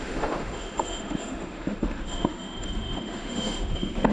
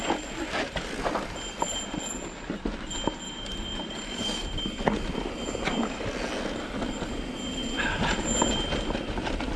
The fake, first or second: first